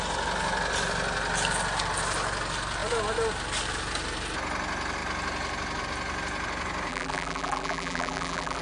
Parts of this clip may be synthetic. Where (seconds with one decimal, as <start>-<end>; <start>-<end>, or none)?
6.9-8.6